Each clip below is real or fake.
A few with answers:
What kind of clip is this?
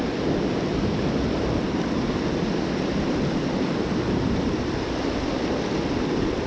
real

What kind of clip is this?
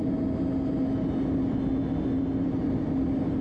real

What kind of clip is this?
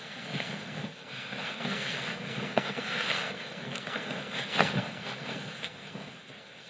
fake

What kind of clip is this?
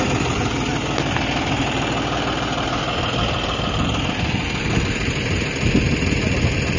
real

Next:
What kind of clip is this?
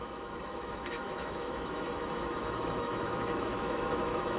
fake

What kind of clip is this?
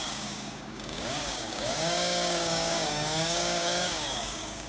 fake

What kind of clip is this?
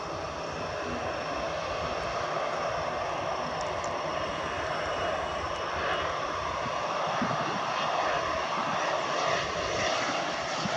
real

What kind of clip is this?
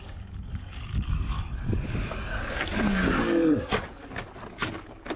fake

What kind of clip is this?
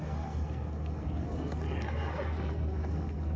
fake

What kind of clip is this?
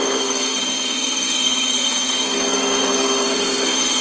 fake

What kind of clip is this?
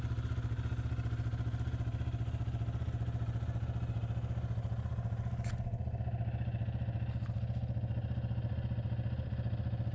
real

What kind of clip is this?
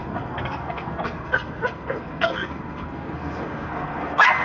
fake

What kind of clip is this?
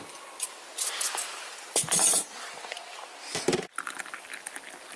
fake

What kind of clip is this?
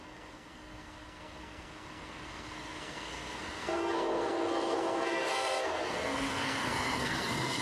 fake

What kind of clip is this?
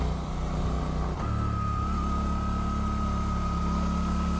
real